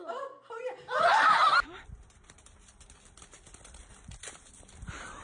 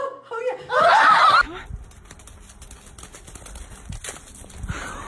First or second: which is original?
second